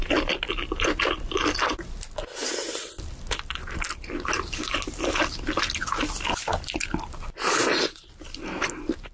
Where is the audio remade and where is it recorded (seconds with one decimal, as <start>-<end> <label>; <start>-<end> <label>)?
0.0-9.1 recorded

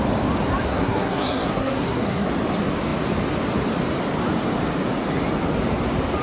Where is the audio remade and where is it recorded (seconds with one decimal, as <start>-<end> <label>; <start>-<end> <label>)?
0.0-0.7 recorded; 0.7-2.3 remade; 2.3-6.2 recorded

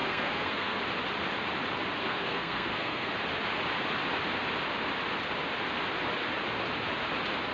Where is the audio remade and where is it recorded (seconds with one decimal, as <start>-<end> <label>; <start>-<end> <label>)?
0.0-0.8 remade; 0.8-2.0 recorded; 2.0-3.1 remade; 3.1-7.5 recorded

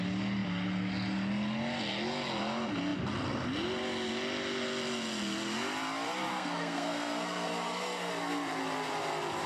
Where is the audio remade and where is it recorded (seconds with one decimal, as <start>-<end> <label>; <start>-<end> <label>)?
0.0-6.3 recorded; 6.3-8.1 remade; 8.1-9.5 recorded

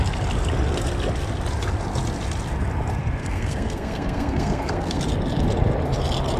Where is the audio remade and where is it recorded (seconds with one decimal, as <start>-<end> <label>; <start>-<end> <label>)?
0.0-3.2 recorded; 3.2-5.0 remade; 5.0-6.4 recorded